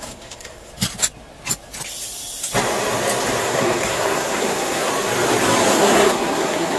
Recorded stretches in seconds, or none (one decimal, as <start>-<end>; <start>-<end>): 0.7-3.4; 4.9-5.7

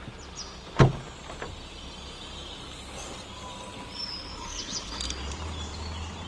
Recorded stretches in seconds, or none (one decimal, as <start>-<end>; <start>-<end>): 0.0-4.3; 5.0-6.3

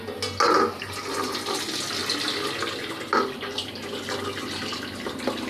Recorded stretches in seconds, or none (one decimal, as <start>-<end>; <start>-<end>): 0.0-5.5

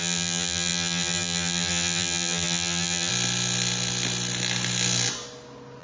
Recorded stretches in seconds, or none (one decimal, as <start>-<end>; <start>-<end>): 3.1-5.8

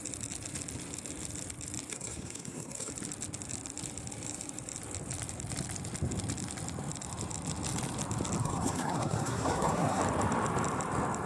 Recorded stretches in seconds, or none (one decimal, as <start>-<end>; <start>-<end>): 0.0-1.9; 2.9-8.4; 10.0-11.3